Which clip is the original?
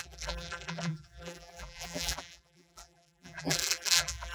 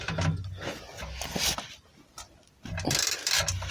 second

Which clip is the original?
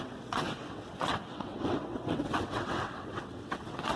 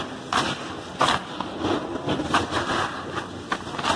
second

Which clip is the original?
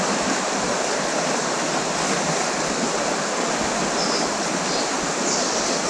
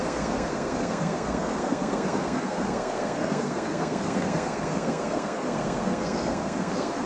first